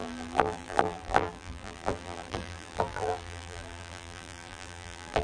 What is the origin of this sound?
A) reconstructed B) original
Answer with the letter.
A